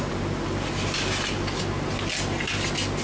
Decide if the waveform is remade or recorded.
recorded